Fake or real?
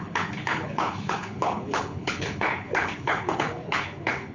fake